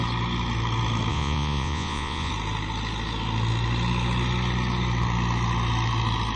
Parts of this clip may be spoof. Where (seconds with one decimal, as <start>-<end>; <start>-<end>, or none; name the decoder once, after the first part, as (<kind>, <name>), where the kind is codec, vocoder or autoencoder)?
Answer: 1.1-2.3 (vocoder, Vocos)